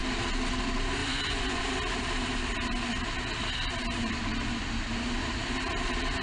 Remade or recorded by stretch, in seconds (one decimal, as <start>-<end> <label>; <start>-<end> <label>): 0.0-1.0 recorded; 1.0-1.6 remade; 1.6-6.2 recorded